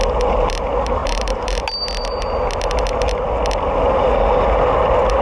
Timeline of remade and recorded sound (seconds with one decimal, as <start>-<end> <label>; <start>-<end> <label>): 0.0-1.0 recorded; 1.0-1.6 remade; 1.6-5.2 recorded